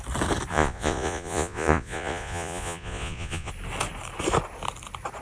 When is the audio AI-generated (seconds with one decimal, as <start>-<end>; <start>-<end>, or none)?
0.5-3.5